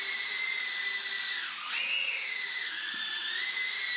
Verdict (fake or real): real